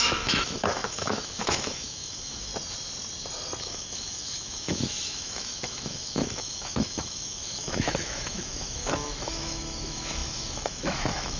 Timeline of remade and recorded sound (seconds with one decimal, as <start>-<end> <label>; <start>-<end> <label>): 0.0-2.5 remade; 2.5-3.6 recorded; 3.6-11.4 remade